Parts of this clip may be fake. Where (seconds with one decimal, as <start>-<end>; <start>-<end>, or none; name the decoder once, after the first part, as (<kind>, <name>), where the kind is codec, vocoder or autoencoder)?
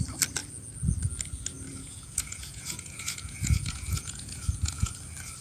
1.7-4.9 (vocoder, Vocos)